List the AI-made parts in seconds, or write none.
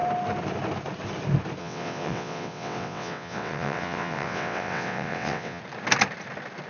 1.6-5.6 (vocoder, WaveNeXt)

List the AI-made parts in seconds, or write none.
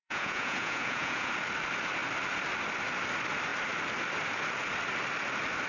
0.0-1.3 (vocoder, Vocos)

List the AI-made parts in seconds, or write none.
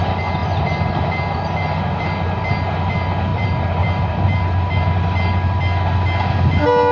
3.3-4.4 (vocoder, BigVGAN v2)